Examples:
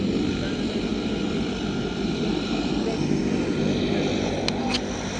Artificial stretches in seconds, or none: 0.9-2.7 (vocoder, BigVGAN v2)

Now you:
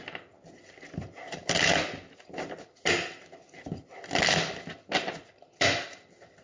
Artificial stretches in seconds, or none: none

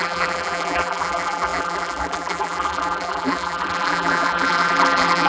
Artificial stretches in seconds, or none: 0.0-5.3 (vocoder, BigVGAN v2)

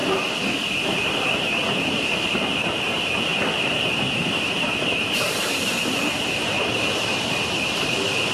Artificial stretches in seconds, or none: 0.0-8.3 (vocoder, BigVGAN v2)

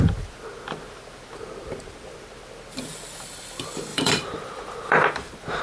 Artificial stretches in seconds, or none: 3.9-5.6 (vocoder, BigVGAN v2)

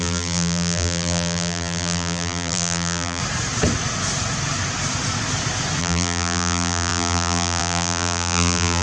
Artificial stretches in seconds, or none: 0.0-3.2 (vocoder, BigVGAN v2); 5.8-8.8